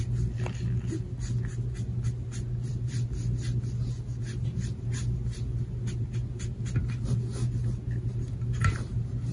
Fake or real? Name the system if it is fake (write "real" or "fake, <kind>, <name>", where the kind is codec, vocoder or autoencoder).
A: real